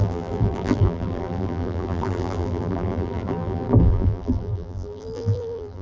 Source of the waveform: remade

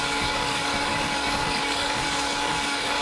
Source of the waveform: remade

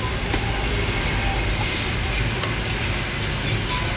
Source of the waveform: recorded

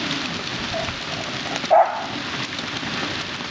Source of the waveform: recorded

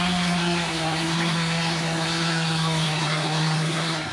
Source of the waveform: remade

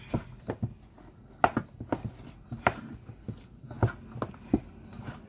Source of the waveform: recorded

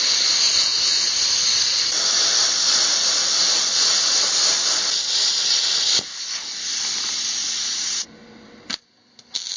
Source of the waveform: remade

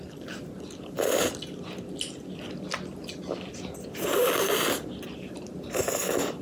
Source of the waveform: recorded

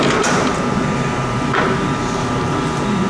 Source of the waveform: remade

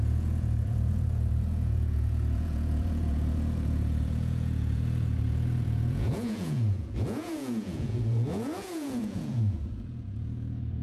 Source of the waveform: remade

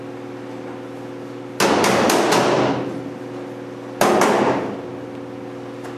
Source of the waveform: recorded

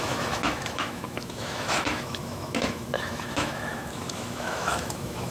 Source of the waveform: remade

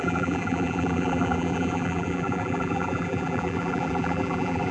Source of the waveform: remade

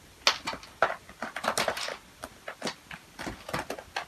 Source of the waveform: recorded